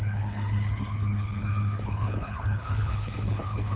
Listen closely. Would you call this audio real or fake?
fake